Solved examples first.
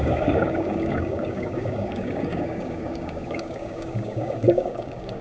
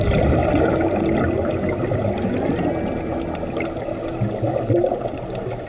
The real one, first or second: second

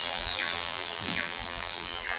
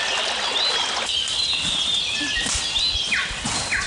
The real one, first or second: second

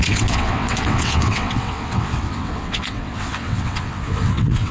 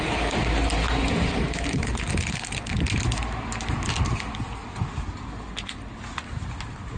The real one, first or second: second